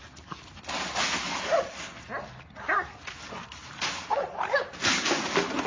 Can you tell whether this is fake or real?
real